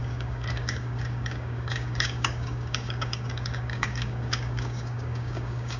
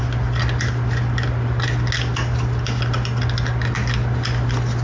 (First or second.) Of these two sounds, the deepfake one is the first